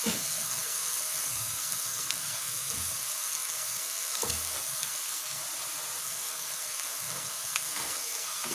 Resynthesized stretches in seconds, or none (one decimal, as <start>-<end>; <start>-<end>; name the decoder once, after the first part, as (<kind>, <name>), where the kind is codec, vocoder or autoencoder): 0.0-5.4 (codec, SNAC); 6.0-8.5